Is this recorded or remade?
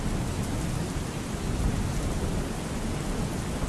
recorded